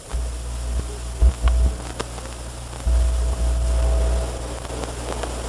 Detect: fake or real real